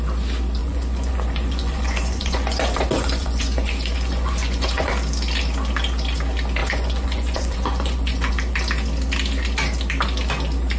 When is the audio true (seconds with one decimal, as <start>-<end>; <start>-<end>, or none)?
0.0-0.6; 4.9-6.6; 8.3-10.8

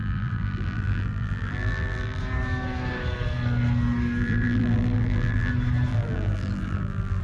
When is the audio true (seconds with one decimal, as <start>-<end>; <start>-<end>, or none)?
2.2-4.2; 5.5-5.9

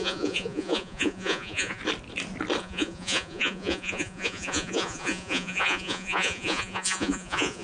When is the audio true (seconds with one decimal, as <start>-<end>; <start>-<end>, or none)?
1.8-2.6